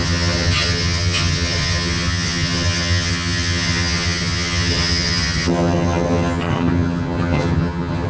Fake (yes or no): yes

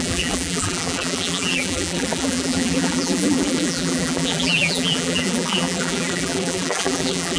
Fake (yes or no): yes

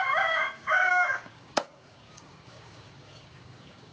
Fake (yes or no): yes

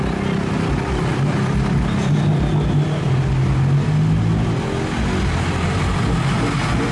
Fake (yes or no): no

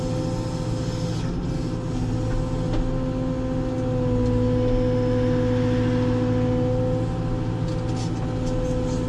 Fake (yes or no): no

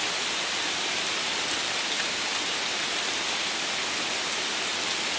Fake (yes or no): no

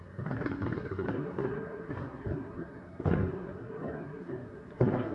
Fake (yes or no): yes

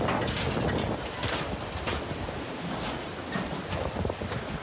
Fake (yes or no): no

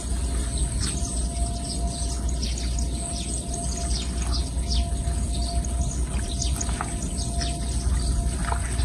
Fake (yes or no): no